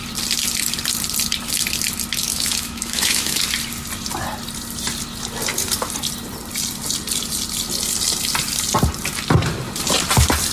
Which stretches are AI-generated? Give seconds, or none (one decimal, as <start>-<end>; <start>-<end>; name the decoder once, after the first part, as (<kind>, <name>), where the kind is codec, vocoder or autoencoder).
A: 2.3-3.4 (autoencoder, DAC-VAE)